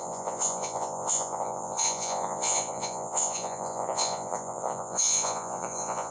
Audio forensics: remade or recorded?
remade